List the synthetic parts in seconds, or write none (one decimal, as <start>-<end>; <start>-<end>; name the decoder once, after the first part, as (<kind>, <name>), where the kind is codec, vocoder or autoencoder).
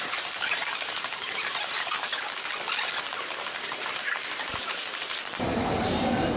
0.0-2.1 (vocoder, BigVGAN v2); 4.6-6.4